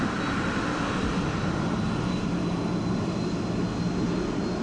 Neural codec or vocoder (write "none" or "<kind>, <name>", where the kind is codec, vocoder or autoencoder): none